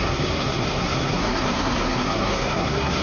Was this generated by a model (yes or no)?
yes